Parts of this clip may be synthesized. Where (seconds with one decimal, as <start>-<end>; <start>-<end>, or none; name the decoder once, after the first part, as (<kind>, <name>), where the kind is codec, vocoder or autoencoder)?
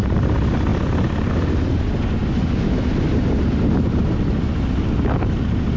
none